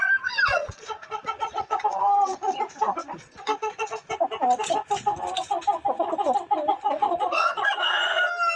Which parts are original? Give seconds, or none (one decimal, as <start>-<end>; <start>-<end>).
0.0-0.5; 2.6-3.0; 4.1-6.7; 8.2-8.6